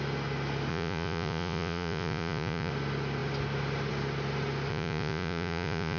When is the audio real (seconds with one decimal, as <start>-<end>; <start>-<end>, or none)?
0.0-0.7; 2.7-4.7